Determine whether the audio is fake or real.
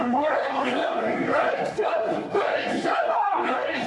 fake